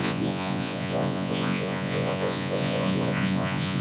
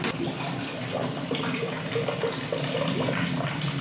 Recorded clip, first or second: second